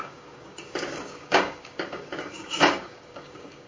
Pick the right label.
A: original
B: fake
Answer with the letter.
B